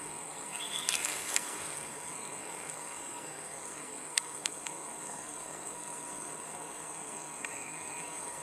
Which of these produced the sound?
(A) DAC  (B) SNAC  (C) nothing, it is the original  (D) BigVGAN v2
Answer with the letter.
B